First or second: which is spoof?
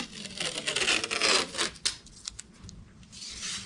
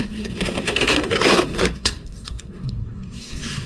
second